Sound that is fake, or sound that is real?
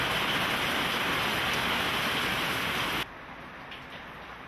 real